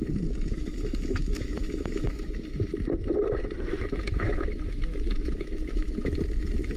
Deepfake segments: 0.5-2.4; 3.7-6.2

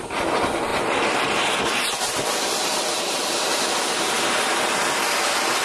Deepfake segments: 0.7-4.1

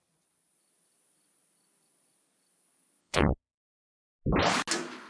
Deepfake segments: 3.0-3.6

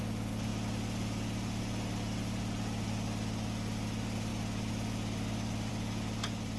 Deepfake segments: none

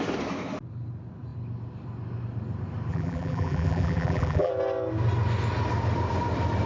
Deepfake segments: 2.9-4.5

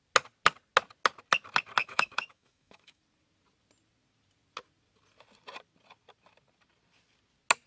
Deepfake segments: 1.8-3.0